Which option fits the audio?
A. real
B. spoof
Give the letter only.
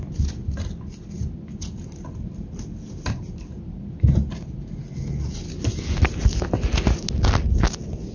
A